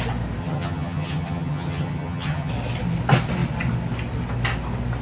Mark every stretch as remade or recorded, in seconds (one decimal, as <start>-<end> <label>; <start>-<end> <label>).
0.0-0.4 recorded; 0.4-2.5 remade; 2.5-5.0 recorded